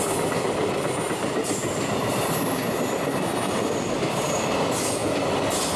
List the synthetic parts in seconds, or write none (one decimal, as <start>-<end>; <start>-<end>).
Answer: none